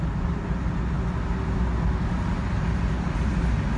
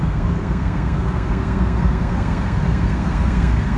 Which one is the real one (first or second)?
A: first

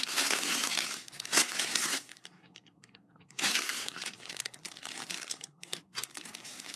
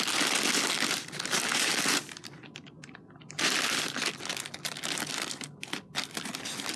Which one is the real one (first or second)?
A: second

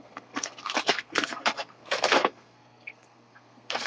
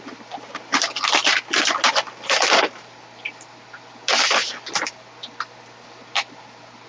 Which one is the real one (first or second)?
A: second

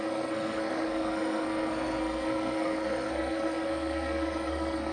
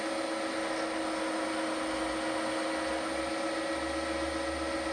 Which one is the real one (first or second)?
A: second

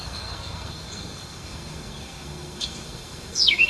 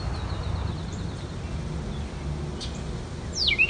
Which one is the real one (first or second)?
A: second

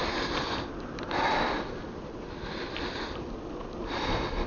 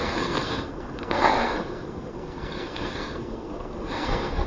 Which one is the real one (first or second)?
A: first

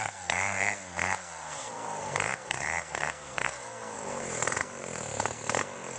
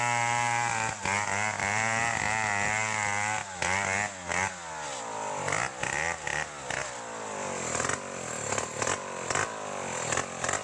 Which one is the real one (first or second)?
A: second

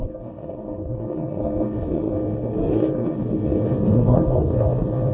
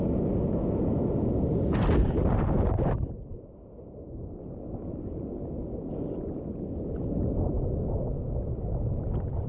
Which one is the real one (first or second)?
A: second